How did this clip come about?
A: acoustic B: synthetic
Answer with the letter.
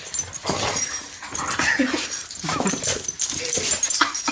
A